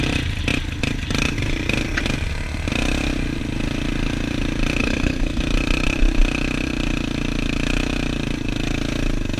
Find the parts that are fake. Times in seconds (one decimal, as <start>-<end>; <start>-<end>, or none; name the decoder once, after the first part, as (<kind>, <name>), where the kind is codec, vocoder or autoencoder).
4.8-5.4 (codec, SNAC)